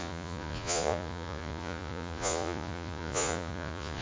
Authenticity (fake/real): fake